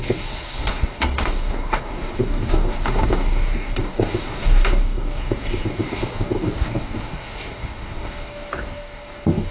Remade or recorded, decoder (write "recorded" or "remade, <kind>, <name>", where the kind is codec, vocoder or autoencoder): remade, codec, DAC